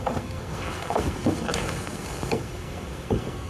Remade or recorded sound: remade